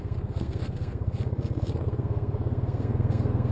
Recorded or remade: remade